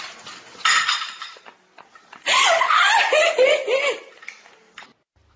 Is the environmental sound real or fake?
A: real